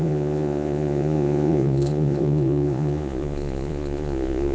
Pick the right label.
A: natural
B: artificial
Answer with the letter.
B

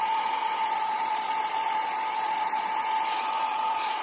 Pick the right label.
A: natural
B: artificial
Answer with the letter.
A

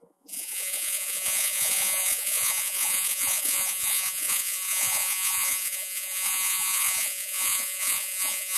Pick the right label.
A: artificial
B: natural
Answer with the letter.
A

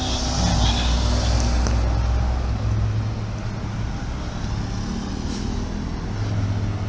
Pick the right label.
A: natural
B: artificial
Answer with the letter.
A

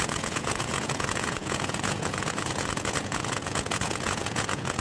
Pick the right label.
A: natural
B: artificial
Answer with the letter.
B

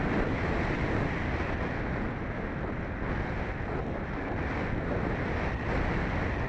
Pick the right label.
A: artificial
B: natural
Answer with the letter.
B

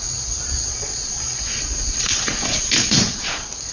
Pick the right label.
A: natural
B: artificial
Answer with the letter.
B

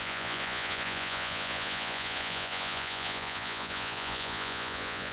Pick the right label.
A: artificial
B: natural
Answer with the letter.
A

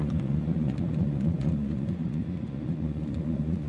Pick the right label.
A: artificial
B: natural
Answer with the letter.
A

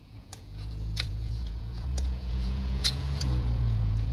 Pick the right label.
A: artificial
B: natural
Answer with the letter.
A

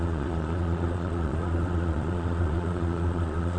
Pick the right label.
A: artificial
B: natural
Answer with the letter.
A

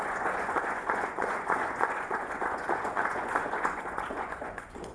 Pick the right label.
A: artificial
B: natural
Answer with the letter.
A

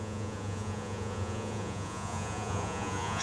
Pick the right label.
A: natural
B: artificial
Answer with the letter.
B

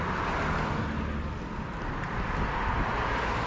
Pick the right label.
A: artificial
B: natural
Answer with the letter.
B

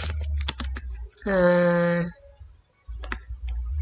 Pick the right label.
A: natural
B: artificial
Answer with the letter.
A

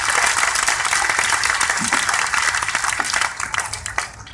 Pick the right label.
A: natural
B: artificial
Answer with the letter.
A